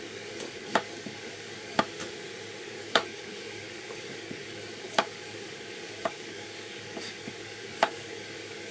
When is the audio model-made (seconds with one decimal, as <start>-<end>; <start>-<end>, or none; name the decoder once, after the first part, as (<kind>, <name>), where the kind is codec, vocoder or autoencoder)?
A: 0.0-2.0 (codec, DAC); 2.6-8.7